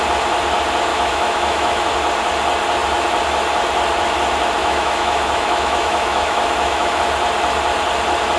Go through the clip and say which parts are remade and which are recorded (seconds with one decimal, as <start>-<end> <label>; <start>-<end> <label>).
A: 0.0-0.9 recorded; 0.9-1.9 remade; 1.9-4.6 recorded; 4.6-7.0 remade; 7.0-8.4 recorded